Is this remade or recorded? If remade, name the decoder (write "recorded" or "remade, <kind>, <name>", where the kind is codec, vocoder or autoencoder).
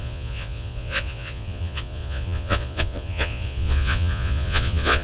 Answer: remade, vocoder, Vocos